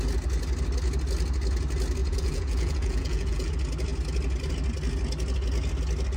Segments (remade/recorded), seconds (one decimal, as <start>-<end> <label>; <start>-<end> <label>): 0.0-2.0 recorded; 2.0-3.5 remade; 3.5-6.2 recorded